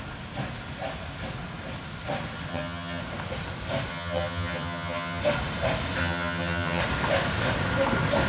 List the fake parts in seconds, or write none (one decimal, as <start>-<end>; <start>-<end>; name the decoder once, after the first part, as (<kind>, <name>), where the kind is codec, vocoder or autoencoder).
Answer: 2.5-3.0 (vocoder, HiFi-GAN); 3.9-5.2; 6.0-6.8